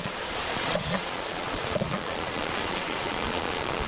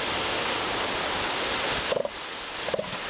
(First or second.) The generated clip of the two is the first